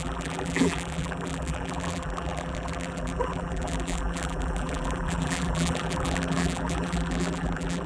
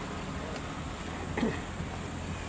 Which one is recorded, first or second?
second